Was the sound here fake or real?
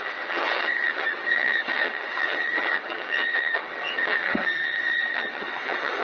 fake